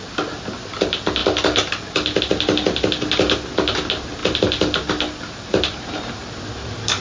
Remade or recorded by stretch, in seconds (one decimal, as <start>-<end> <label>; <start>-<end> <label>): 0.0-7.0 recorded